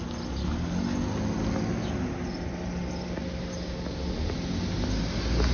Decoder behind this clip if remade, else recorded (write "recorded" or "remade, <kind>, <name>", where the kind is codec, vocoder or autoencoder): recorded